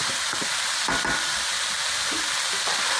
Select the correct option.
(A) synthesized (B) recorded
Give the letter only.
B